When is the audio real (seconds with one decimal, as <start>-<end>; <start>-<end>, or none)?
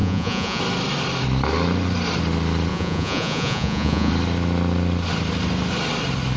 0.6-2.7; 4.1-6.4